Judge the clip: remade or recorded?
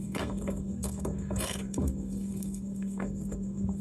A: remade